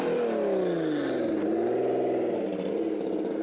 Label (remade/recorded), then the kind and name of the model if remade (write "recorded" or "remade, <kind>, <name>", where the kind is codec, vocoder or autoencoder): recorded